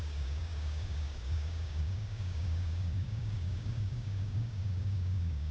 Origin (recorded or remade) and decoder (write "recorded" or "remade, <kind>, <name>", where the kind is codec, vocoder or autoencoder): remade, codec, DAC